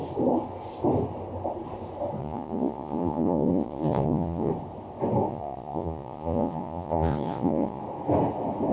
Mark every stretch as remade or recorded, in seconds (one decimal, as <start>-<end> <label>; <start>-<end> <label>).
0.0-2.2 recorded; 2.2-4.5 remade; 4.5-5.3 recorded; 5.3-7.8 remade; 7.8-8.7 recorded